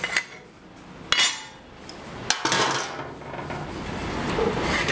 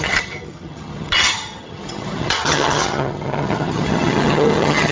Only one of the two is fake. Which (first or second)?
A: second